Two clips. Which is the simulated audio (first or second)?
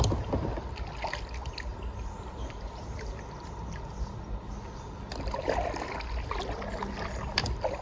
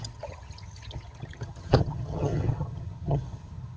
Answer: second